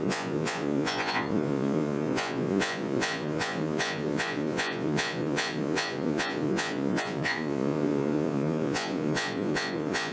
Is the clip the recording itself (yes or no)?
no